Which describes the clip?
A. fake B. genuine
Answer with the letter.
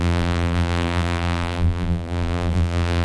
A